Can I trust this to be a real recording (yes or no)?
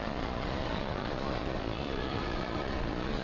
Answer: no